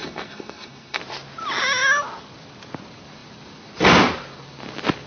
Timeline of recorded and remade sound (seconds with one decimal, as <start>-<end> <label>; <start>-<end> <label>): 0.0-1.0 remade; 1.0-5.1 recorded